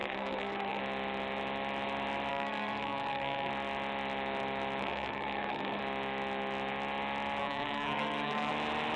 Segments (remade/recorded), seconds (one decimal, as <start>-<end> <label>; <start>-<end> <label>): 0.0-0.8 remade; 0.8-2.3 recorded; 2.3-3.5 remade; 3.5-4.8 recorded; 4.8-5.8 remade; 5.8-7.4 recorded; 7.4-8.5 remade; 8.5-9.0 recorded